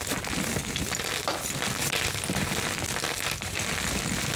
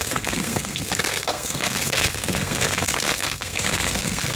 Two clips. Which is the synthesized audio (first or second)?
second